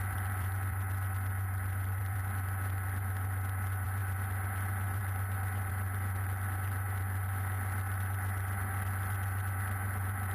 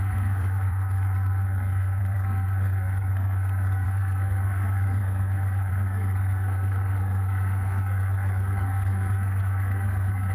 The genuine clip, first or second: first